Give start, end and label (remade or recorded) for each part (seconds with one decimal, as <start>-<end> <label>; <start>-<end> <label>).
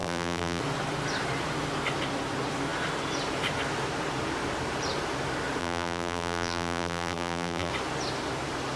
0.0-0.6 remade; 0.6-5.6 recorded; 5.6-7.7 remade; 7.7-8.8 recorded